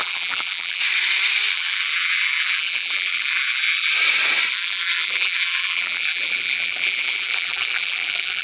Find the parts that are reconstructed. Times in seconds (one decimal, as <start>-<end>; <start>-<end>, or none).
0.0-0.8; 1.5-3.9; 4.5-8.4